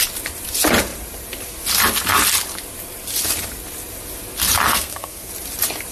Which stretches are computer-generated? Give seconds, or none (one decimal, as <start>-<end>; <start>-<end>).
4.7-5.3